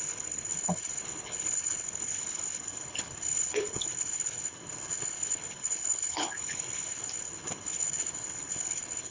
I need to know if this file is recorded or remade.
remade